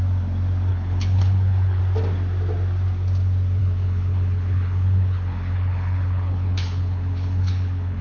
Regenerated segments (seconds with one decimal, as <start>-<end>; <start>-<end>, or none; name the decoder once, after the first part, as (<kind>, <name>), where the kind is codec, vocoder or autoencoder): 0.7-1.8 (codec, HILCodec); 3.6-8.0